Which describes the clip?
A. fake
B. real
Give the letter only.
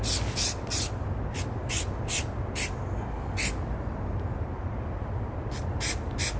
B